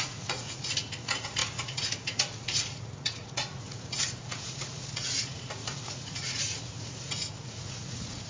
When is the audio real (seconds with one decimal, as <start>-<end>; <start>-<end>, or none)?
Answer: none